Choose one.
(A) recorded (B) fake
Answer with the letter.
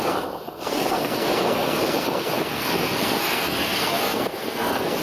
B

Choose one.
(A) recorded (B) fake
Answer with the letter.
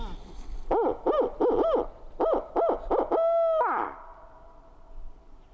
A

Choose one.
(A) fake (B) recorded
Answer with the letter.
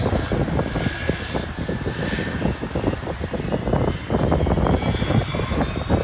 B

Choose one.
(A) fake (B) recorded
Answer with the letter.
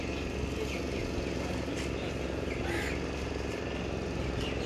B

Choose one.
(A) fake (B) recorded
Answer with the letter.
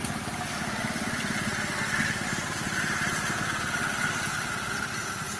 B